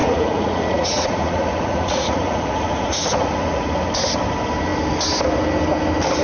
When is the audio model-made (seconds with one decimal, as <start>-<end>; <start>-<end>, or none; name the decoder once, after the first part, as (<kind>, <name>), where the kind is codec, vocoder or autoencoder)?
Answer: 0.0-3.7 (vocoder, Vocos)